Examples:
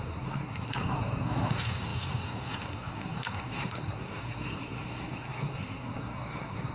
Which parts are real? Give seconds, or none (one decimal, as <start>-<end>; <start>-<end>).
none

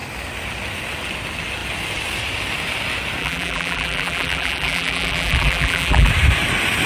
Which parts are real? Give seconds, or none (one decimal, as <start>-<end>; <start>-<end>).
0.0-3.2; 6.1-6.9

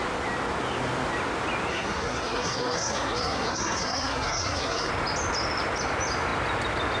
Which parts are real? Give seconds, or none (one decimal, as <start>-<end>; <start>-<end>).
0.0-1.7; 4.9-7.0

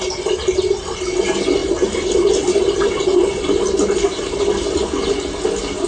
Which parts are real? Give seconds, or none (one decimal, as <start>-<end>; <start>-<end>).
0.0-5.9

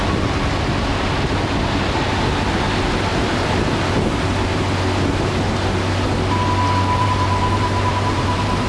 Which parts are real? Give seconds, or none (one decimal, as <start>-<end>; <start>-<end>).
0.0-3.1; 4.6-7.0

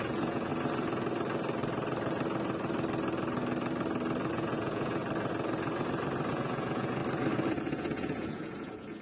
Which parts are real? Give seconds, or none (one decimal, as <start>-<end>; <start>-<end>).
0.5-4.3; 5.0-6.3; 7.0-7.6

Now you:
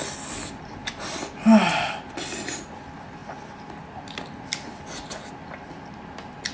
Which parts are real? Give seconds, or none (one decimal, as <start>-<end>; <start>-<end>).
0.0-6.5